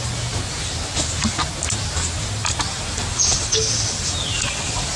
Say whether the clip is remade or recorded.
recorded